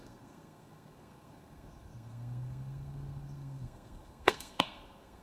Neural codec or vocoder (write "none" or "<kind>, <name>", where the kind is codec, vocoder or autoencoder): codec, SNAC